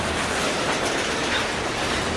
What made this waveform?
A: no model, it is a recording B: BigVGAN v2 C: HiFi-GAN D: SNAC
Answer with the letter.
A